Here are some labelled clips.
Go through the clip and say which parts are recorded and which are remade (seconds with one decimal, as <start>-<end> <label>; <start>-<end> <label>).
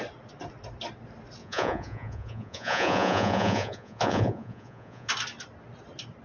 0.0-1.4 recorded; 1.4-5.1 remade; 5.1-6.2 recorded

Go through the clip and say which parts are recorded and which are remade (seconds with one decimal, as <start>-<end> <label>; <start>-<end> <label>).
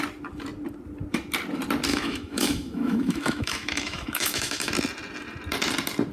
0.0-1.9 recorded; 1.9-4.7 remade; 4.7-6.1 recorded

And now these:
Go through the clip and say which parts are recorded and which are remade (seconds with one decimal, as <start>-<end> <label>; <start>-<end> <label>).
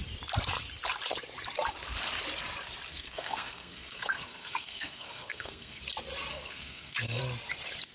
0.0-2.9 recorded; 2.9-5.8 remade; 5.8-6.3 recorded; 6.3-7.2 remade; 7.2-7.9 recorded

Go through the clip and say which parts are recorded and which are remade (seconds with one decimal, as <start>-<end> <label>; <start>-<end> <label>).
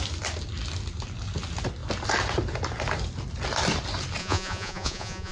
0.0-4.2 recorded; 4.2-5.3 remade